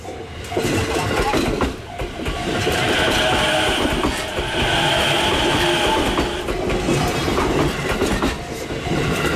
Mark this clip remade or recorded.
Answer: recorded